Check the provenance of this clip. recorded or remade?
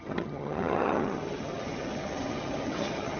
remade